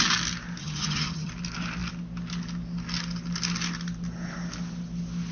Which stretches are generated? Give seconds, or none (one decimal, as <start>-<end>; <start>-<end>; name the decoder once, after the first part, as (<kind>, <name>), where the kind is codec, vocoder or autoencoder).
0.6-1.3 (vocoder, HiFi-GAN)